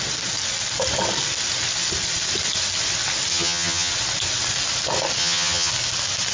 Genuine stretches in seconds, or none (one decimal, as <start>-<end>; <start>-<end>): 0.0-3.3; 3.9-5.2; 5.7-6.3